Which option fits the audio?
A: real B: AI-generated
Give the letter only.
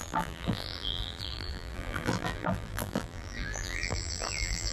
B